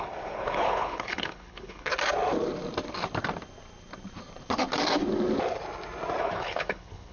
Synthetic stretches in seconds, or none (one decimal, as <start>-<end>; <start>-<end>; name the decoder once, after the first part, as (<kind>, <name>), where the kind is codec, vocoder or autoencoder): 0.0-1.9 (codec, HILCodec); 6.2-7.1